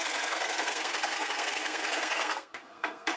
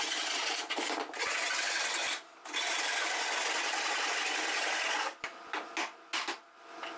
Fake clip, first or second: first